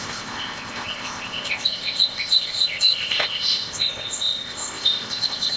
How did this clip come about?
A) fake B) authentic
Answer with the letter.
A